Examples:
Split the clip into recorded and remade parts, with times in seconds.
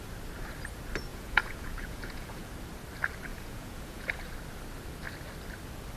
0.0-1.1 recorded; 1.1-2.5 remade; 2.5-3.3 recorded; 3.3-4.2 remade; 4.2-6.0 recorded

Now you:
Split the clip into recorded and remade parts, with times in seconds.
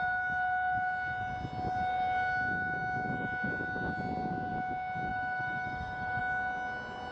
0.0-5.1 recorded; 5.1-6.2 remade; 6.2-7.1 recorded